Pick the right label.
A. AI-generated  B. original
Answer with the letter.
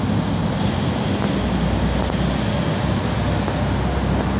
B